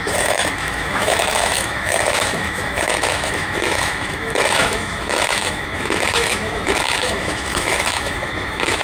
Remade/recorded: remade